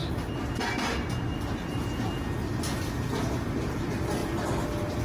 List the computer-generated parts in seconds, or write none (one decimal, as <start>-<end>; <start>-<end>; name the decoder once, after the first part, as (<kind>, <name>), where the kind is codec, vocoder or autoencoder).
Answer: none